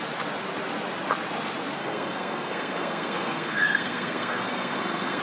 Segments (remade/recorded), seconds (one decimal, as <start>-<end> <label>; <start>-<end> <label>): 0.0-1.8 recorded; 1.8-5.2 remade